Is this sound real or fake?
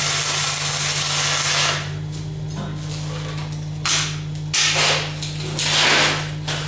real